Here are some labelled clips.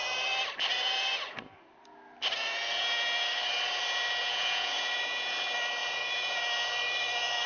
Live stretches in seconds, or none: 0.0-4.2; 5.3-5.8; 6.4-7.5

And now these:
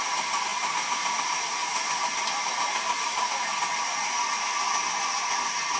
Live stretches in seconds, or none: 0.0-5.8

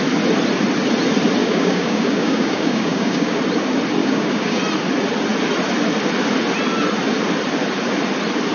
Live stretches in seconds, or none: 0.0-1.4; 3.4-4.0; 4.6-8.5

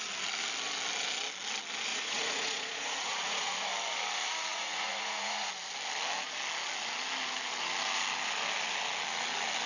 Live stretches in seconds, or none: 0.0-1.9; 3.7-4.5; 5.5-9.7

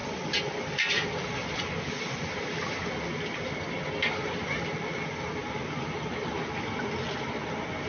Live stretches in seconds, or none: 0.0-7.9

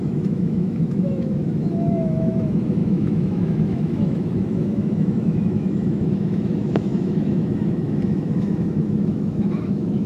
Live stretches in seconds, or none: none

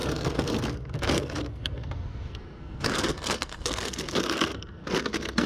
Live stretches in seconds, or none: none

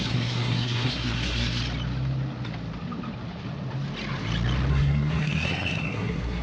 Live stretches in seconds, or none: 1.6-4.7